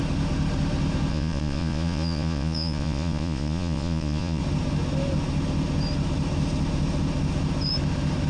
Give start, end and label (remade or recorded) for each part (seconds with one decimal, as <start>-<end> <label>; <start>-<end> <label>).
0.0-1.1 recorded; 1.1-4.4 remade; 4.4-8.3 recorded